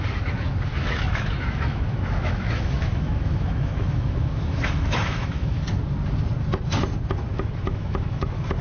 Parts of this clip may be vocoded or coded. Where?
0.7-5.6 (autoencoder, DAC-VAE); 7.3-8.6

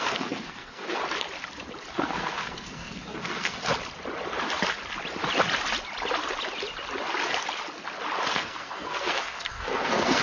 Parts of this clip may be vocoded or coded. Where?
0.0-1.0 (codec, SNAC); 1.9-3.7; 8.3-10.2

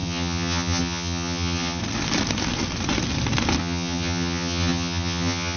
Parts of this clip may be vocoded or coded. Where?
0.0-1.8 (vocoder, HiFi-GAN); 3.6-5.6

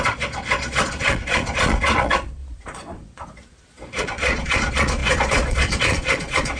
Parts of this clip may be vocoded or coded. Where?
0.0-6.6 (vocoder, Vocos)

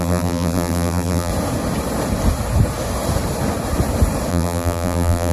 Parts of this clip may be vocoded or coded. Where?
0.0-1.3 (vocoder, BigVGAN v2); 4.3-5.3

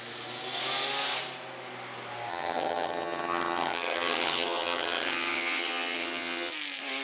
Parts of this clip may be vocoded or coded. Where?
2.3-6.5 (vocoder, HiFi-GAN)

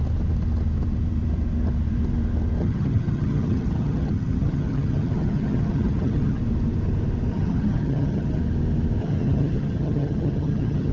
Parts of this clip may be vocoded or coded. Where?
2.6-6.4 (vocoder, HiFi-GAN); 7.3-8.4; 9.0-10.9

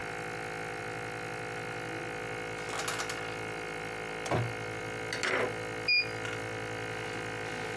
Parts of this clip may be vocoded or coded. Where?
none